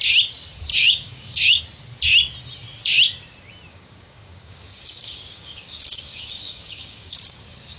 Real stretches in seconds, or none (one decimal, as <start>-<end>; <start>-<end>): 0.0-0.7; 1.6-3.7